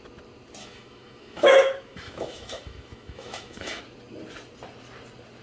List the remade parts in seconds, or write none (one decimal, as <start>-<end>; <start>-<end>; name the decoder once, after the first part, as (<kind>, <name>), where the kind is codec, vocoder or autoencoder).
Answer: 0.6-3.8 (autoencoder, DAC-VAE)